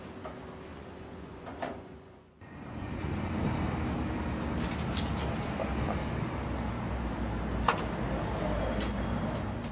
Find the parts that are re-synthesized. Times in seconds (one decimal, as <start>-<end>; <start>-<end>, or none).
0.7-3.1